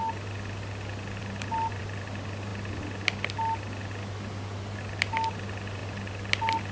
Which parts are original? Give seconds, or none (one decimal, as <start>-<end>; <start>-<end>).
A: 0.0-5.8; 6.3-6.7